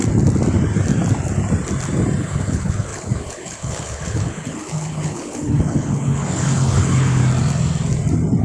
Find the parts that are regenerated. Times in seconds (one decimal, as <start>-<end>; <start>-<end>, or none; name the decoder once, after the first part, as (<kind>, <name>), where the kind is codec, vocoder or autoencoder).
2.2-7.2 (codec, HILCodec)